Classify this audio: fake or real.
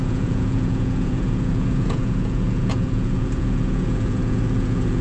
fake